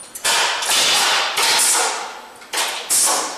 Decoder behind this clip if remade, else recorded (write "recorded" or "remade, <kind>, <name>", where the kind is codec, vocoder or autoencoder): recorded